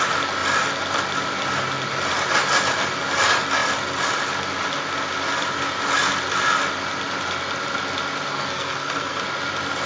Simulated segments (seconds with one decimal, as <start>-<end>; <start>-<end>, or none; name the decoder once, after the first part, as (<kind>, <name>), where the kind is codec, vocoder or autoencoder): 8.3-9.2 (codec, SNAC)